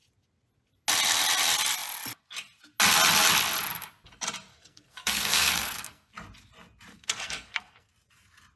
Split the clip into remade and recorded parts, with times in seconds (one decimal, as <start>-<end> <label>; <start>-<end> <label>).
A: 0.0-4.5 recorded; 4.5-6.1 remade; 6.1-6.9 recorded; 6.9-7.9 remade; 7.9-8.6 recorded